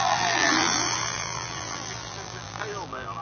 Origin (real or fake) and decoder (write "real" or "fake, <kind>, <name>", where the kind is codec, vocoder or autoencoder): fake, vocoder, BigVGAN v2